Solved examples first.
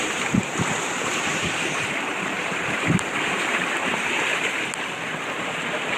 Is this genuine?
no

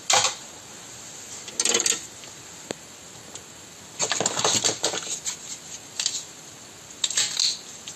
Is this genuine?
yes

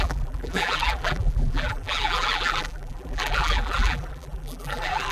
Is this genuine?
no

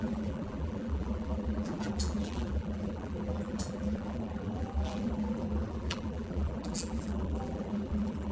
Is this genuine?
no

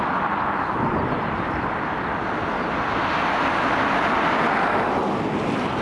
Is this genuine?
yes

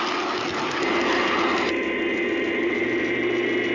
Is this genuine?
yes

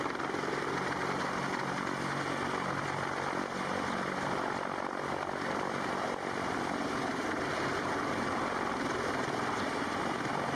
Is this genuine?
yes